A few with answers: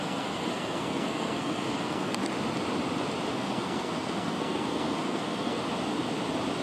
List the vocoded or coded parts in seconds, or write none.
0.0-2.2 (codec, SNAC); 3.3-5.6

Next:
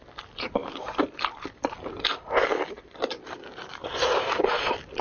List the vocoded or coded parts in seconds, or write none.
none